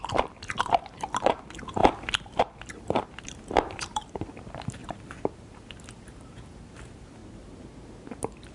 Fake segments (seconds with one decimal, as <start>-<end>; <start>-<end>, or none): 0.0-4.8; 5.3-7.2